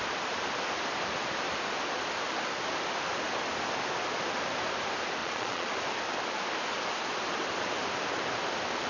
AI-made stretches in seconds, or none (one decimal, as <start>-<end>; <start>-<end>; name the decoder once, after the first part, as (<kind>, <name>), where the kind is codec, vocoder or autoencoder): 5.2-5.7 (vocoder, Vocos)